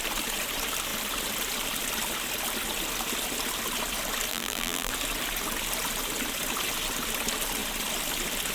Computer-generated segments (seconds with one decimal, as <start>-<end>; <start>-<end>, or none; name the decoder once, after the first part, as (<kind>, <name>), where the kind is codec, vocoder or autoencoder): 4.3-4.9 (vocoder, BigVGAN v2)